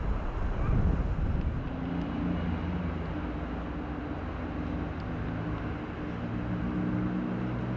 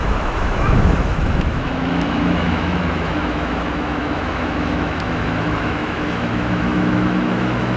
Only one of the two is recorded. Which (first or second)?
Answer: first